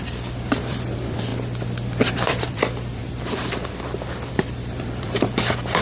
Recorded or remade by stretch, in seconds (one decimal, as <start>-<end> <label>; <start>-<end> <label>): 0.0-1.3 remade; 1.3-2.1 recorded; 2.1-5.8 remade